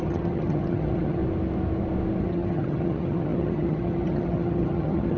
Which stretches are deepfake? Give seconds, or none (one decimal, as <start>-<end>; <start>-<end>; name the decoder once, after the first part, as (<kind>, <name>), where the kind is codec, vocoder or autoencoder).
0.0-1.2 (vocoder, HiFi-GAN); 2.2-5.2